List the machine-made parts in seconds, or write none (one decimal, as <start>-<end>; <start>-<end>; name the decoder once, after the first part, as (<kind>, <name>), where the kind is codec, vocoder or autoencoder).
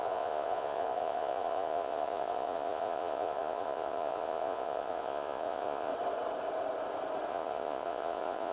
0.0-5.9 (vocoder, Vocos); 7.3-8.5